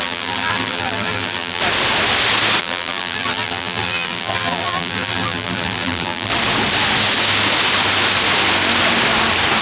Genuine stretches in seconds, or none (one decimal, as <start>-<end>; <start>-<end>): 1.6-2.6; 6.3-9.6